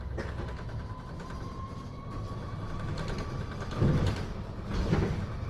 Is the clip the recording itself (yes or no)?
yes